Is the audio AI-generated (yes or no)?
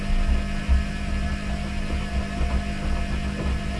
no